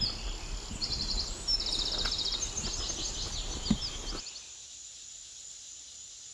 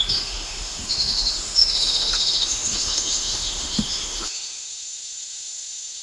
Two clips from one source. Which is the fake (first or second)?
second